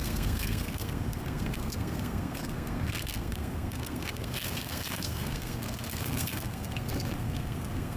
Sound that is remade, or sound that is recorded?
remade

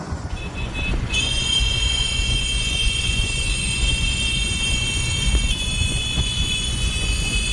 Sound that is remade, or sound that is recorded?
remade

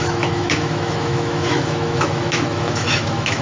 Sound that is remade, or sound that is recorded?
remade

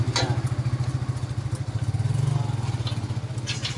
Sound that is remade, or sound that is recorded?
recorded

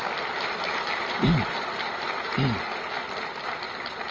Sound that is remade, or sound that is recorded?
recorded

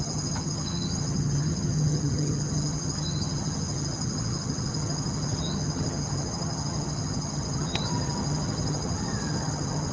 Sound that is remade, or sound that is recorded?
remade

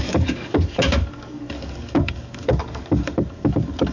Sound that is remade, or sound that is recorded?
remade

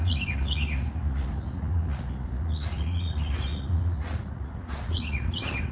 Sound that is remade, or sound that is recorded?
remade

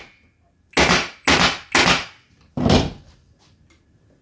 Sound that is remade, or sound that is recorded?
recorded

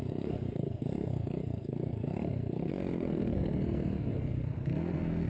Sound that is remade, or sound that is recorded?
remade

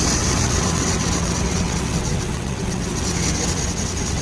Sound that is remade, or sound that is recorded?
remade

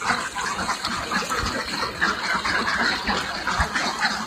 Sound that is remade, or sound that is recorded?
recorded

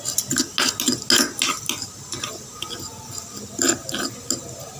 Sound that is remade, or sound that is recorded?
recorded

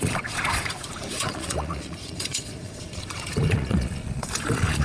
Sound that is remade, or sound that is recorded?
remade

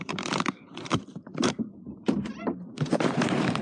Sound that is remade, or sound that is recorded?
remade